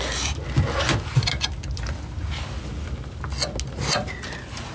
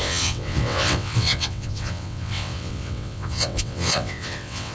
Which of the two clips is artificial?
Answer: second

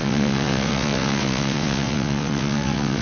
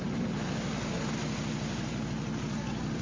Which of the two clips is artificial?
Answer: first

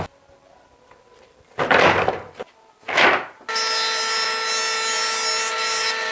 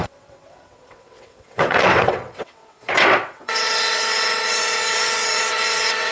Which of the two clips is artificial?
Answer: second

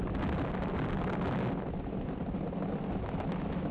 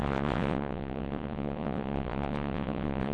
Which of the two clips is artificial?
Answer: second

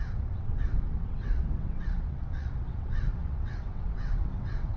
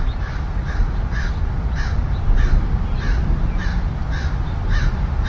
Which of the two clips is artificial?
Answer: first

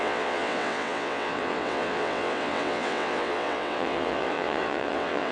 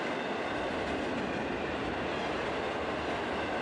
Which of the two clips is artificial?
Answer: first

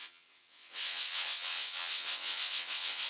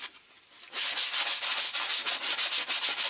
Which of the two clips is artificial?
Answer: first